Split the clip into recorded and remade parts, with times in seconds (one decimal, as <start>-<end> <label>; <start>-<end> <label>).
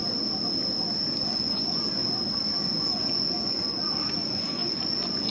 0.0-1.2 recorded; 1.2-2.0 remade; 2.0-2.6 recorded; 2.6-5.3 remade